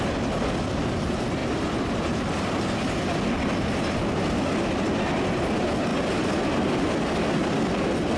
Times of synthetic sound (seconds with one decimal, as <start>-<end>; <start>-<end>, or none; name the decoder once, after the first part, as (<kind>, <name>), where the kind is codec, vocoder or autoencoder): 1.4-2.6 (vocoder, BigVGAN v2); 5.9-6.4